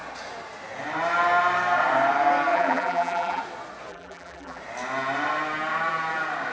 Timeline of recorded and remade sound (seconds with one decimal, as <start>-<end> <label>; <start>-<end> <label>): 0.0-2.5 recorded; 2.5-3.4 remade; 3.4-3.9 recorded; 3.9-4.6 remade; 4.6-6.5 recorded